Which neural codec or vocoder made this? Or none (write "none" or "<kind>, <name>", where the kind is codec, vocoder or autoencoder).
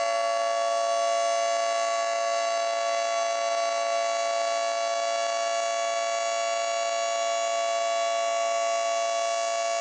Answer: none